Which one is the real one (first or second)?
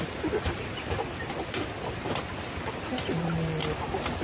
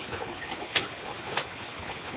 first